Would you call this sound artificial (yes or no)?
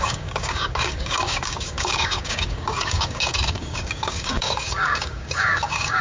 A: yes